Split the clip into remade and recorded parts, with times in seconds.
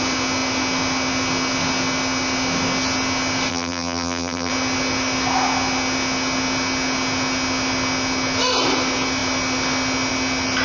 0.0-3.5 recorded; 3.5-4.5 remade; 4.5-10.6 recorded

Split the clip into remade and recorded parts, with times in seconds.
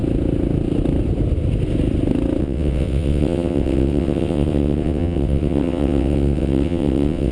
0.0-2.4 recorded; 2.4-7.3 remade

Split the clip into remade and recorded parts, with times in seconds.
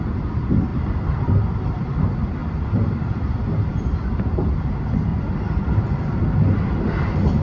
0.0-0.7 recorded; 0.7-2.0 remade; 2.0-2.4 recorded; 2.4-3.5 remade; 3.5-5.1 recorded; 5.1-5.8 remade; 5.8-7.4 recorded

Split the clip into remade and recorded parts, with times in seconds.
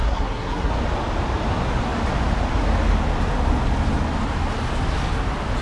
0.0-0.7 remade; 0.7-5.6 recorded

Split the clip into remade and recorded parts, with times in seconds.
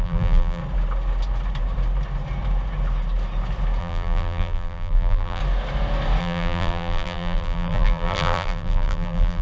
0.0-0.6 remade; 0.6-3.8 recorded; 3.8-5.4 remade; 5.4-6.2 recorded; 6.2-9.4 remade